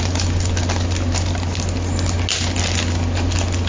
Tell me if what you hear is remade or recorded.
recorded